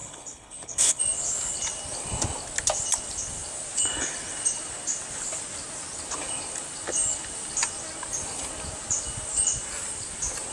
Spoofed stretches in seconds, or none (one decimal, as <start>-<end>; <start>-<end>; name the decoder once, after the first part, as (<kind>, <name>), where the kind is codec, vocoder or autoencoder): 0.0-1.0 (codec, HILCodec)